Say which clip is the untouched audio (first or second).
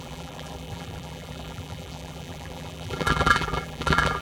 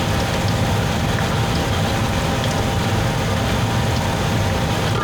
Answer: second